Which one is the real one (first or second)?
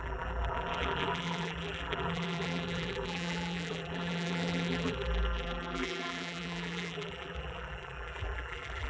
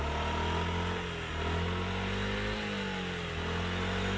second